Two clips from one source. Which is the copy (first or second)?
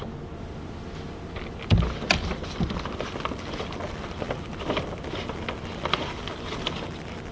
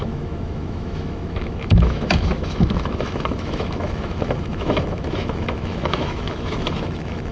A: second